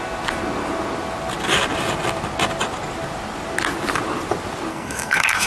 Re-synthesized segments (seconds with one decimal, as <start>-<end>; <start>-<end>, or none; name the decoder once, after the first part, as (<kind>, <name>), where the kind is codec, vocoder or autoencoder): 4.7-5.5 (codec, SNAC)